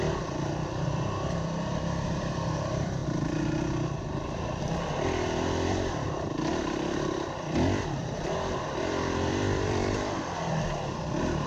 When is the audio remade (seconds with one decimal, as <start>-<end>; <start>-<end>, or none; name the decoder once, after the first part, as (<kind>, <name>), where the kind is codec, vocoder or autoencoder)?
0.0-3.0 (vocoder, BigVGAN v2); 4.6-11.5